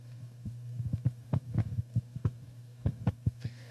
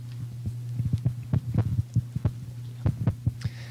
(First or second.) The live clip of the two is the second